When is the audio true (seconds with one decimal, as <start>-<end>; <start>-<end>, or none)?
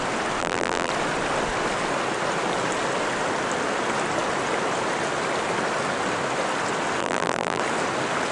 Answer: 0.0-0.4; 0.9-7.0; 7.6-8.3